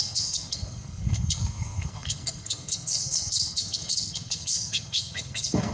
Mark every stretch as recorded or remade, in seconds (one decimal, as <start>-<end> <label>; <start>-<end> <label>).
0.0-5.7 remade